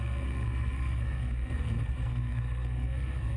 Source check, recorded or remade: remade